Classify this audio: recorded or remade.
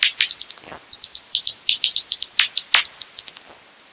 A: recorded